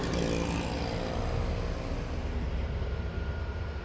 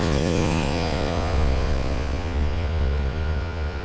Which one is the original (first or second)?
first